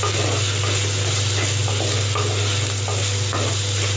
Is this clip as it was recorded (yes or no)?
yes